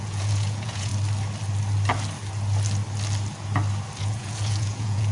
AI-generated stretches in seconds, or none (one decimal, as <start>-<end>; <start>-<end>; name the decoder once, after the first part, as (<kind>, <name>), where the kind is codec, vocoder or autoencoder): 0.0-0.9 (vocoder, Vocos); 4.0-5.1